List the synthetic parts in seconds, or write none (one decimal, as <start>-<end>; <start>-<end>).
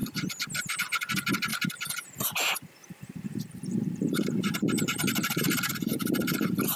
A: 1.5-2.2; 2.8-6.8